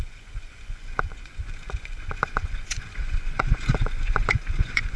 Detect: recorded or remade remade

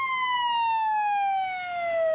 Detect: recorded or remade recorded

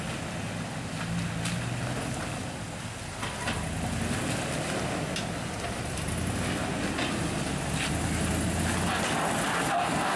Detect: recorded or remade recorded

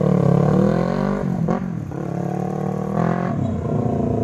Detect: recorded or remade recorded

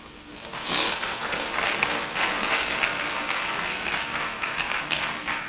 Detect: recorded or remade remade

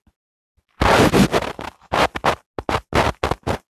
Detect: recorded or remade recorded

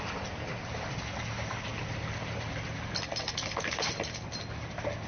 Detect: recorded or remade recorded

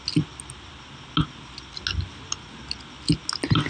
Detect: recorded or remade recorded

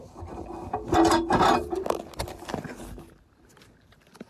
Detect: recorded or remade recorded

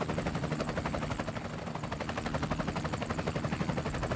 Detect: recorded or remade recorded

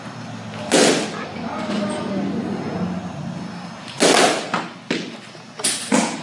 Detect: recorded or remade recorded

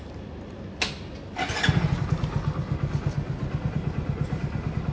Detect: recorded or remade recorded